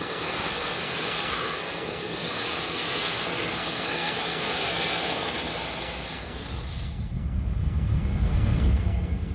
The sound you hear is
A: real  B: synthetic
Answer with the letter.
B